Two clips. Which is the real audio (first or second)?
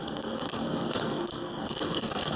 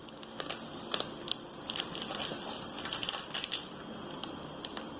second